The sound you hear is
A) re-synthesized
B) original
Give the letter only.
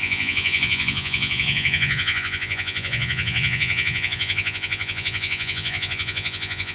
A